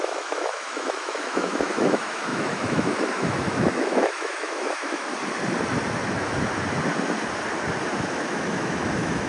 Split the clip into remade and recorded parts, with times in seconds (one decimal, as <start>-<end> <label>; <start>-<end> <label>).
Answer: 0.0-5.1 remade; 5.1-8.1 recorded; 8.1-9.3 remade